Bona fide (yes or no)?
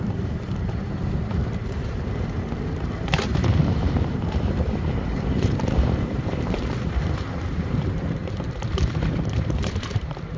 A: no